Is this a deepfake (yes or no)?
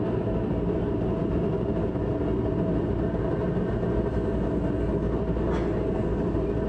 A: no